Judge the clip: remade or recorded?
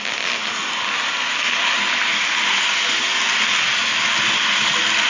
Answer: recorded